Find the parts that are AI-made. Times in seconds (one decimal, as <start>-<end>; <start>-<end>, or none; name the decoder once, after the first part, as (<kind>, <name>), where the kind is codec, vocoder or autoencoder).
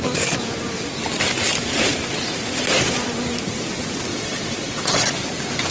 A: 4.1-5.1 (vocoder, Vocos)